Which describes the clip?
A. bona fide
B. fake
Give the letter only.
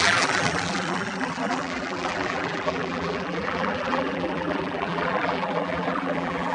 B